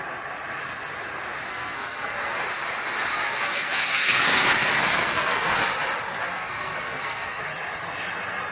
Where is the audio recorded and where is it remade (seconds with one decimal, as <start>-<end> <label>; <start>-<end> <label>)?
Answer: 0.0-1.5 recorded; 1.5-2.4 remade; 2.4-3.1 recorded; 3.1-5.6 remade; 5.6-6.2 recorded; 6.2-7.4 remade; 7.4-8.5 recorded